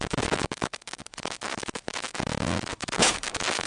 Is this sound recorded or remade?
remade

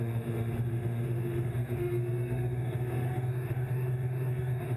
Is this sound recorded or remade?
remade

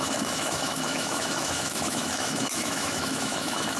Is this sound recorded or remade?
remade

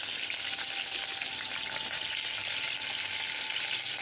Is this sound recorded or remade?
recorded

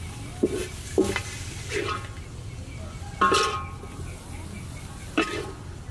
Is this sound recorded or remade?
recorded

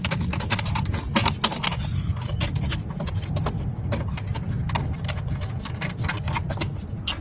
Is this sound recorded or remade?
recorded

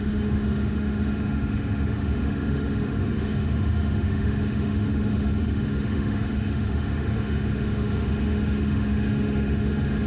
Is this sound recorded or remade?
remade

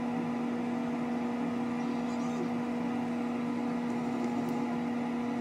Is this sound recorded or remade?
recorded